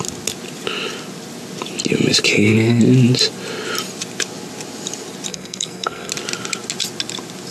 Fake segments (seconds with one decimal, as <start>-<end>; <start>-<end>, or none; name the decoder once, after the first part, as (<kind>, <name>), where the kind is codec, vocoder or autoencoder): 2.3-2.8 (codec, SNAC); 5.3-6.1